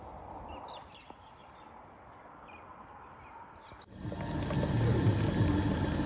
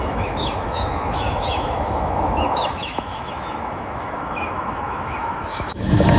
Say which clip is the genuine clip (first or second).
first